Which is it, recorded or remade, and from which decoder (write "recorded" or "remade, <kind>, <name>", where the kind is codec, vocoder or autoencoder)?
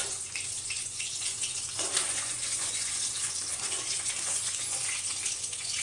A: remade, vocoder, Vocos